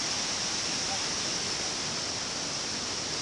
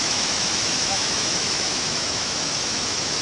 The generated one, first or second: second